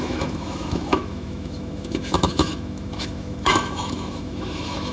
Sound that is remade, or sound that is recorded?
remade